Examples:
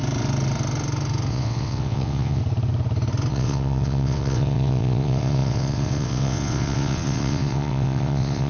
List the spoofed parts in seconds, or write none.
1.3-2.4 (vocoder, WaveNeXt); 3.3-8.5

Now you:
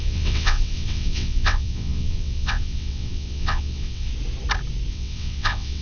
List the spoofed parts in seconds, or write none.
0.0-4.1 (vocoder, WaveNeXt); 4.9-5.8

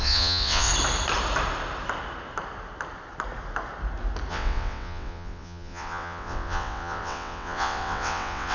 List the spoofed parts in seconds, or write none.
0.0-0.7 (vocoder, WaveNeXt); 4.3-8.5

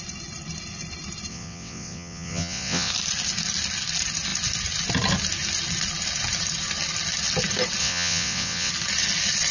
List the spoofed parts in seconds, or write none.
1.3-2.9 (vocoder, WaveNeXt); 7.8-8.7

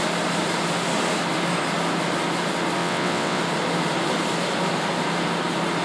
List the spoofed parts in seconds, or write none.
2.8-3.4 (vocoder, WaveNeXt)

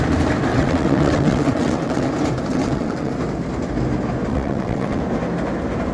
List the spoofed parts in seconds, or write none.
0.5-2.1 (vocoder, WaveNeXt); 2.5-3.1; 4.3-5.0

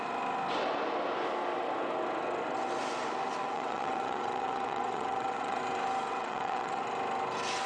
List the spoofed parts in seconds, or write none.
3.4-5.6 (vocoder, WaveNeXt); 6.1-6.8